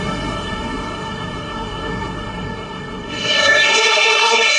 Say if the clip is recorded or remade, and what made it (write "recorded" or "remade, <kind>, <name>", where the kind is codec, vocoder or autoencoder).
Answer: remade, codec, SNAC